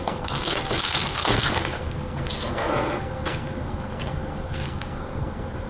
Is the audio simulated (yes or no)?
yes